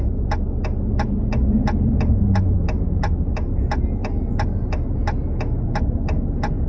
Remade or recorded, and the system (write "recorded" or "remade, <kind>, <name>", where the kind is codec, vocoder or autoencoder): recorded